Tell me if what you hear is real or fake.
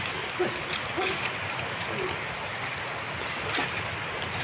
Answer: real